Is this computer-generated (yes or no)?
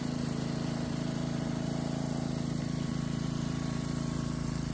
yes